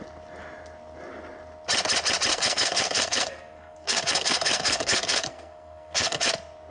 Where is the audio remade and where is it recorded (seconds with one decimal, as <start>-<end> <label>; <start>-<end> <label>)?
0.0-2.3 recorded; 2.3-6.3 remade; 6.3-6.7 recorded